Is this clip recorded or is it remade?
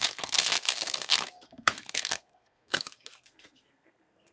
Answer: remade